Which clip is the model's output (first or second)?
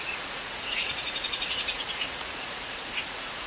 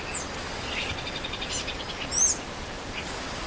first